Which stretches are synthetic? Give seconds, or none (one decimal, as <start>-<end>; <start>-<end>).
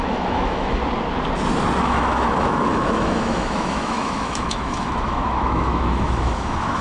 0.0-0.8; 1.8-6.8